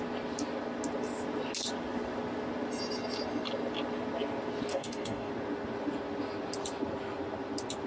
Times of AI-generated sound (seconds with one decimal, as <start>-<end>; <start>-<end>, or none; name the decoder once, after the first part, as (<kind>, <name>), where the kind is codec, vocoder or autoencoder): 4.7-5.3 (codec, DAC)